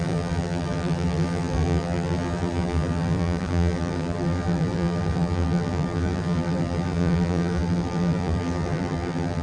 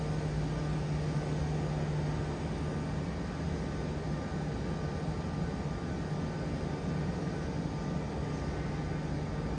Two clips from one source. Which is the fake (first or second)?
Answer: first